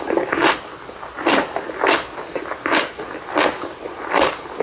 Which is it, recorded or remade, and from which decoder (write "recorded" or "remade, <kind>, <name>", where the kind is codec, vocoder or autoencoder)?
recorded